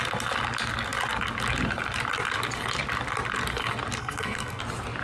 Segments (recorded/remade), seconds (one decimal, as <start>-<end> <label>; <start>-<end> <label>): 0.0-4.0 recorded; 4.0-4.6 remade; 4.6-5.0 recorded